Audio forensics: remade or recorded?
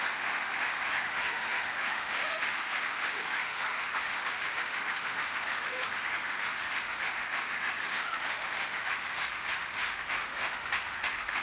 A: remade